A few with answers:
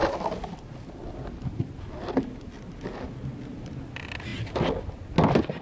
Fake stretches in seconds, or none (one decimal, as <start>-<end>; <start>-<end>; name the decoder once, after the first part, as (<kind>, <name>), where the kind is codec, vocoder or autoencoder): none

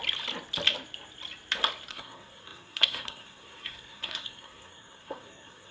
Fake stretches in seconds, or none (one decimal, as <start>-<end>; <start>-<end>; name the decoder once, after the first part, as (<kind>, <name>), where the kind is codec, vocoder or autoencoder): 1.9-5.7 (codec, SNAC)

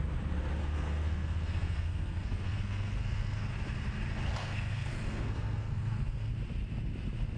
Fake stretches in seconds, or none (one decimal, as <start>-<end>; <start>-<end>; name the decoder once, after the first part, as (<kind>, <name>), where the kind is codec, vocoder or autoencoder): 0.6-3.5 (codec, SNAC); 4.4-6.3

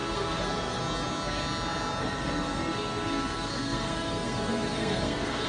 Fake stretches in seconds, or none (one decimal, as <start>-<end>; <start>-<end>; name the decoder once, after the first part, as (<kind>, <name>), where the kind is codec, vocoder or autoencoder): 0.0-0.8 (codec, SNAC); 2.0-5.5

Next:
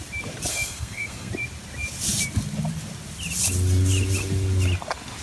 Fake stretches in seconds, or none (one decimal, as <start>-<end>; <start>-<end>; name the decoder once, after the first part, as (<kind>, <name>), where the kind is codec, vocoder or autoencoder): 0.5-1.3 (codec, SNAC)